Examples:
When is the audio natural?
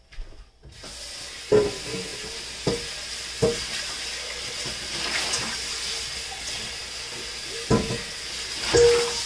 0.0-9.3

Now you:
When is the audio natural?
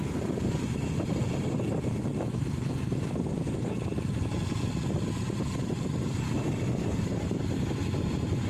3.9-6.9